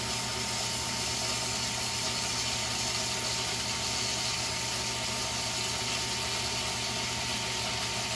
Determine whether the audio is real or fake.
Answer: real